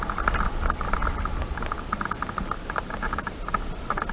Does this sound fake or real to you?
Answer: real